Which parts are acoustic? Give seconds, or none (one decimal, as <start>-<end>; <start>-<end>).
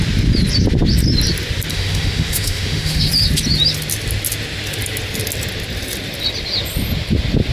0.0-1.7; 3.1-7.5